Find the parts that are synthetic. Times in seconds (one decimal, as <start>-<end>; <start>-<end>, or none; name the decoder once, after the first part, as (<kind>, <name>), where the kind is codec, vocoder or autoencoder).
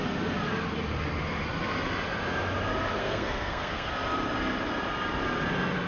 3.0-3.9 (codec, SNAC)